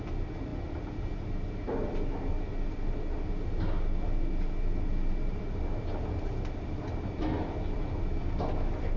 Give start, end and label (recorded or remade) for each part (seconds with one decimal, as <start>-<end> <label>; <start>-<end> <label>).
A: 0.0-9.0 recorded